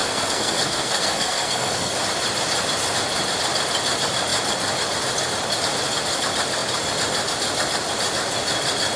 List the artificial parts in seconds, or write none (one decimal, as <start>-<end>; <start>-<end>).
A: 0.0-1.9